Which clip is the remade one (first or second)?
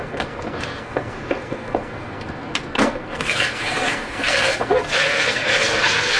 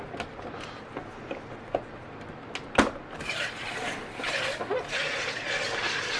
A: first